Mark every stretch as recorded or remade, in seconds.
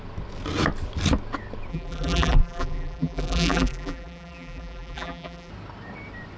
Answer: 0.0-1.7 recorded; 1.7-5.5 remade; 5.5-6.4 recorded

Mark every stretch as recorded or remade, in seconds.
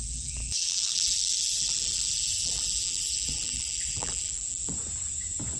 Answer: 0.0-4.7 remade; 4.7-5.6 recorded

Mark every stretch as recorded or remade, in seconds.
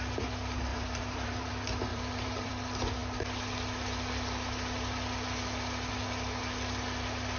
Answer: 0.0-0.7 recorded; 0.7-1.5 remade; 1.5-1.9 recorded; 1.9-2.5 remade; 2.5-7.4 recorded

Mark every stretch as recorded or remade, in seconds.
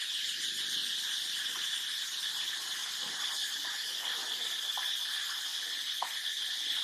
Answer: 0.0-0.8 recorded; 0.8-2.2 remade; 2.2-5.5 recorded; 5.5-6.8 remade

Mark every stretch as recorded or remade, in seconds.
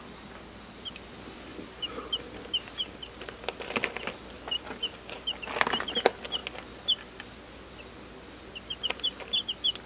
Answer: 0.0-9.9 recorded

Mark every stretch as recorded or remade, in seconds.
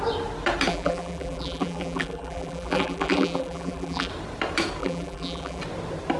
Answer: 0.0-0.7 recorded; 0.7-4.1 remade; 4.1-4.8 recorded; 4.8-5.6 remade; 5.6-6.2 recorded